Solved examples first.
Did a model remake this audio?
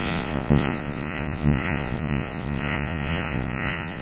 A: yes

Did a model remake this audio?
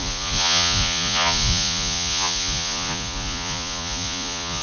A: yes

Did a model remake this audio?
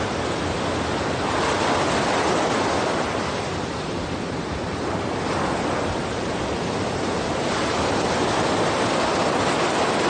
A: no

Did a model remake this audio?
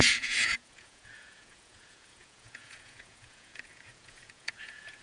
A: yes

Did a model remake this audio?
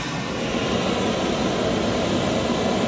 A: no